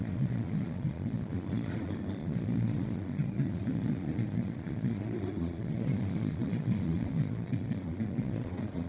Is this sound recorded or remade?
remade